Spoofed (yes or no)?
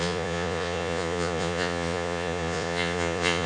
yes